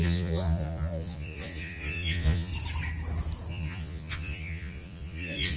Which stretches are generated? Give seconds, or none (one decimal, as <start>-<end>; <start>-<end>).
0.0-2.5; 3.5-5.6